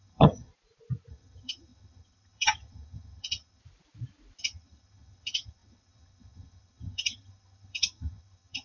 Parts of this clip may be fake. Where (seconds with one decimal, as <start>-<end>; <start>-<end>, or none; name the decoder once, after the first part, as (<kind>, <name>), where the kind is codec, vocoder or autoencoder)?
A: 0.0-0.5 (vocoder, HiFi-GAN); 1.1-3.6; 4.4-8.6